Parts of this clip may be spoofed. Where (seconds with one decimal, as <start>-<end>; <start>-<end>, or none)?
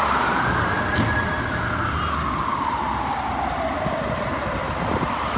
none